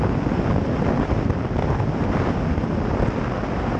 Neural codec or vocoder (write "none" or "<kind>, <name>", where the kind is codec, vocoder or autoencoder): none